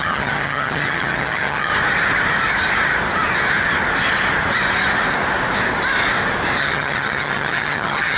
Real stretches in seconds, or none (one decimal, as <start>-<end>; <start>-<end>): 1.7-6.6